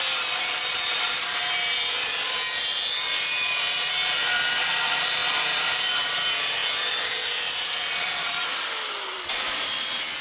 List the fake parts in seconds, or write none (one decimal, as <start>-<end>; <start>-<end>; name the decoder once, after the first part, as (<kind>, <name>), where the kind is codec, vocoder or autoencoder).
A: 0.0-5.2 (vocoder, BigVGAN v2); 5.7-10.2